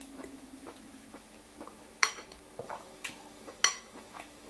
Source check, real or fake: fake